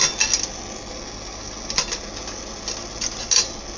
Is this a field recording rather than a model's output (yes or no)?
yes